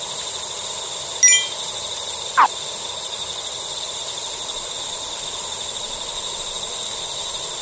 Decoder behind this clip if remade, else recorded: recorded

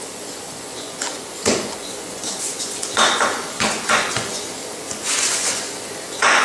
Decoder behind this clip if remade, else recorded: remade, vocoder, Vocos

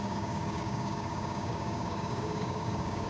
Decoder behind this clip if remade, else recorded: remade, codec, DAC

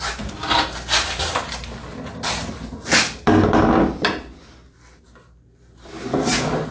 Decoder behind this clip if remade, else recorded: recorded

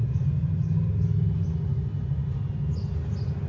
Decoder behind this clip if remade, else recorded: recorded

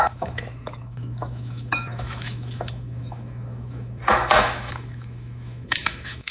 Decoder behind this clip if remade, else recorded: remade, autoencoder, DAC-VAE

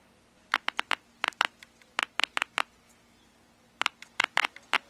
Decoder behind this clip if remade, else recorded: recorded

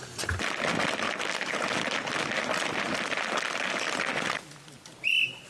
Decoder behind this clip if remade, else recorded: recorded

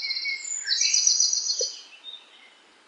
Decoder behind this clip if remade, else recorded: recorded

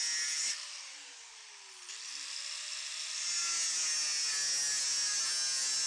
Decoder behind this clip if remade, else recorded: recorded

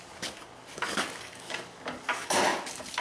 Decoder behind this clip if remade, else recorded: remade, codec, DAC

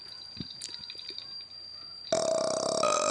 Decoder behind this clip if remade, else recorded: recorded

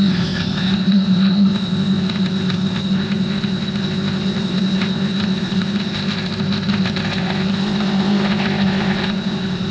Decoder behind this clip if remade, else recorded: remade, codec, ZipCodec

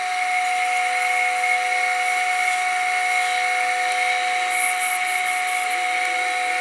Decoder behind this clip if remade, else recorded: recorded